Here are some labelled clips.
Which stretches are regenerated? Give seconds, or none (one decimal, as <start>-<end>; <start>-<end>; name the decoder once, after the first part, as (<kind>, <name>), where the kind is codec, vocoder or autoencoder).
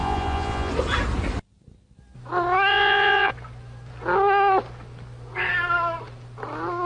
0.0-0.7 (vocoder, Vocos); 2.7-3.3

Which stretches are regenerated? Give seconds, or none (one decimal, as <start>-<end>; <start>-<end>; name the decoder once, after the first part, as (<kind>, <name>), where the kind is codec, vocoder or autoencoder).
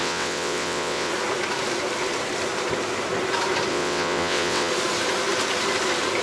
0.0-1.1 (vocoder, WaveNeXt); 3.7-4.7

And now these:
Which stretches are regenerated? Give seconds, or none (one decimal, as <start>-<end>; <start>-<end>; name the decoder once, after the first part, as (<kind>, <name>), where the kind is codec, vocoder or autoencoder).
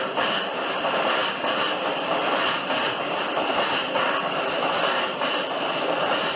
none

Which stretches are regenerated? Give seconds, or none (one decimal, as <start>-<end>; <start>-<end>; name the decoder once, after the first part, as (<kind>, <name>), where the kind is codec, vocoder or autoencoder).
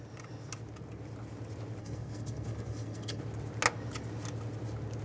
1.8-3.2 (codec, SNAC)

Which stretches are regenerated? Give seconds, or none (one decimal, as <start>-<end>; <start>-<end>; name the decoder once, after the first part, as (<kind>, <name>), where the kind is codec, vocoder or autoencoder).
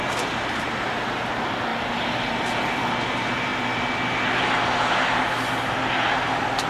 none